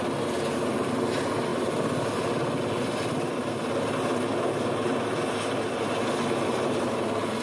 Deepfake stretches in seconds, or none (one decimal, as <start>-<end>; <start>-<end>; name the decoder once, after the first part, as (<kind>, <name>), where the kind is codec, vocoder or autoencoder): none